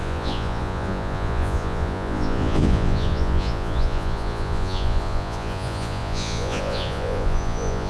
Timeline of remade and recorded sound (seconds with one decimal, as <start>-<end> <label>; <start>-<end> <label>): 0.0-7.9 remade